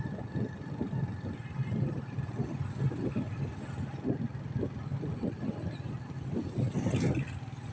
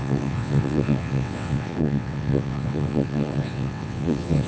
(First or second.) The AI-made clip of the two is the second